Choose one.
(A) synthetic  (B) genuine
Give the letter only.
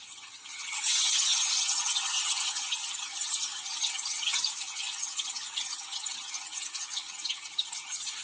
A